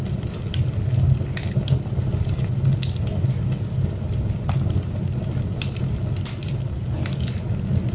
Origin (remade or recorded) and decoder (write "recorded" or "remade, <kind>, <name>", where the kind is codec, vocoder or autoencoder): recorded